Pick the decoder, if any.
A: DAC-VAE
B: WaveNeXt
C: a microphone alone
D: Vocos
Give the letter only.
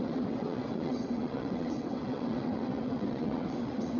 B